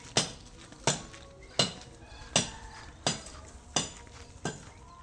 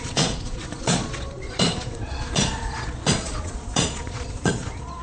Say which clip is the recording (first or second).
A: first